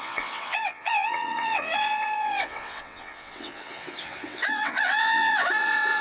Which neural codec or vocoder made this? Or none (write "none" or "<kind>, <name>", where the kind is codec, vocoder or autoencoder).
vocoder, WaveNeXt